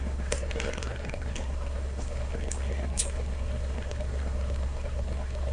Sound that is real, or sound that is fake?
fake